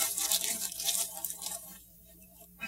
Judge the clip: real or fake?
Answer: fake